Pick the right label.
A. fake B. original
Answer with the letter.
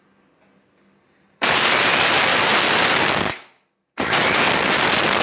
B